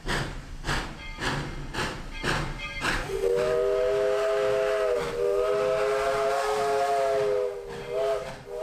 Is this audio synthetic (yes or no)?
no